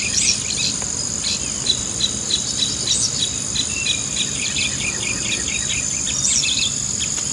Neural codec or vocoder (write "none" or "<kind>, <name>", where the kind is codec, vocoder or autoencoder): none